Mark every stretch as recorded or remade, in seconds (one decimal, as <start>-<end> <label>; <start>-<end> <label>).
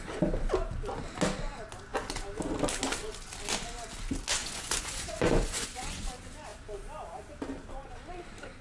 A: 0.0-4.4 recorded; 4.4-6.1 remade; 6.1-8.6 recorded